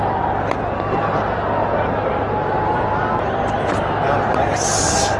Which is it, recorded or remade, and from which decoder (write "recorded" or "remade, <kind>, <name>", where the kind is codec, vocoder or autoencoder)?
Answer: recorded